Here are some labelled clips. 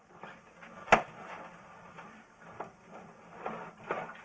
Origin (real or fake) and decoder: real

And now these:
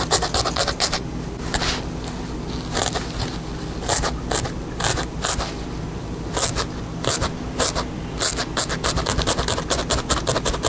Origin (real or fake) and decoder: real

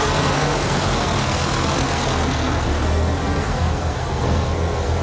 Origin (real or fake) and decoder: fake, codec, SNAC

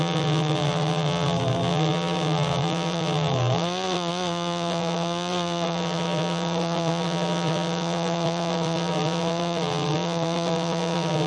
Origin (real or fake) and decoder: fake, vocoder, BigVGAN v2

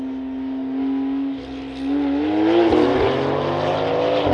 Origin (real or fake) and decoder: real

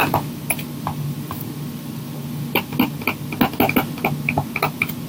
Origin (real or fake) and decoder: real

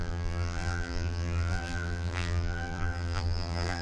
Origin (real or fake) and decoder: fake, vocoder, BigVGAN v2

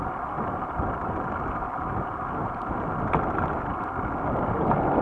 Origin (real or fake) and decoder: real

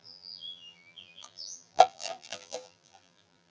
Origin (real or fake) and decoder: fake, vocoder, BigVGAN v2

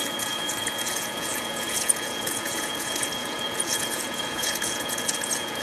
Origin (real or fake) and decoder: fake, vocoder, Vocos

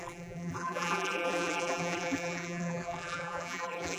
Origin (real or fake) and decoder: fake, vocoder, BigVGAN v2